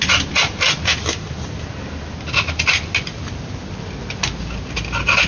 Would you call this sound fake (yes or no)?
no